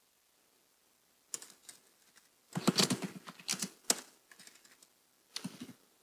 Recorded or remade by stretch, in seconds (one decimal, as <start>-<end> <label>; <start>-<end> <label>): 0.0-6.0 recorded